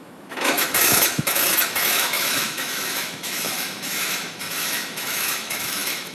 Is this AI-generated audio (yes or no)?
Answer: yes